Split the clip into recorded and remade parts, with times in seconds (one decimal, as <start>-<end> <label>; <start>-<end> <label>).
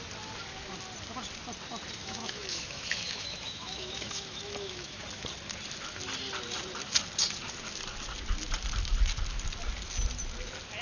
0.0-2.0 recorded; 2.0-5.0 remade; 5.0-10.8 recorded